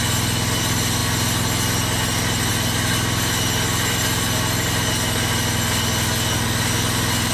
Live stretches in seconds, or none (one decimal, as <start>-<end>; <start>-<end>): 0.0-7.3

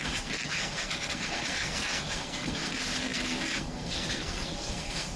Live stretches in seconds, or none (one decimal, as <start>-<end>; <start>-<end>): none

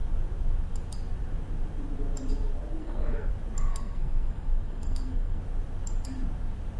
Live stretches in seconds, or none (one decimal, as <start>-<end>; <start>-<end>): 0.0-2.8; 3.3-3.7; 5.4-6.8